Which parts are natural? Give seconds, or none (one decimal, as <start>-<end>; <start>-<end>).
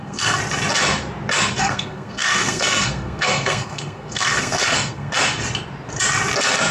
0.4-1.6; 5.1-6.7